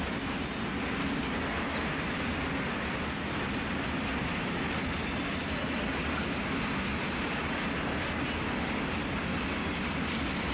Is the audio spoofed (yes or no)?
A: no